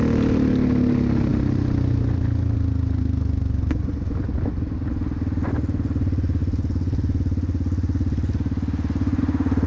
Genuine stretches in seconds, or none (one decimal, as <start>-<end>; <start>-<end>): 0.0-9.7